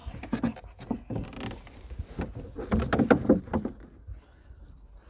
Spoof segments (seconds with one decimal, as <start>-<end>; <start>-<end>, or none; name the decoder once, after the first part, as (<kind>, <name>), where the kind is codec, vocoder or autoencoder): none